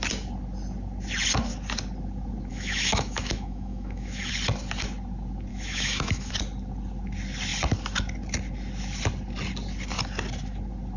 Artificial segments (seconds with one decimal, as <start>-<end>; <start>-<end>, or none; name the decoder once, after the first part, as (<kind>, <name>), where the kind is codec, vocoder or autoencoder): 2.5-4.3 (autoencoder, DAC-VAE); 5.5-6.3